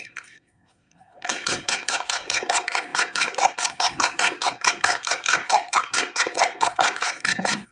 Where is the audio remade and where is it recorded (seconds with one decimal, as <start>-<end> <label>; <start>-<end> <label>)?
0.0-7.7 remade